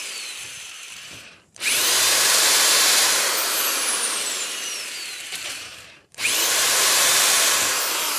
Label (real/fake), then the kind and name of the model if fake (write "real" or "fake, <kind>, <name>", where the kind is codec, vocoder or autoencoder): fake, vocoder, BigVGAN v2